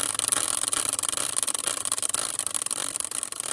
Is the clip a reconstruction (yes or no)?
no